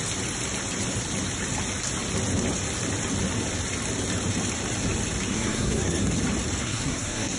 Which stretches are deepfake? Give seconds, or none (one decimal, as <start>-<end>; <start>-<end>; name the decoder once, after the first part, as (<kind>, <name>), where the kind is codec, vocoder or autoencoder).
5.3-6.1 (codec, SNAC); 6.6-7.4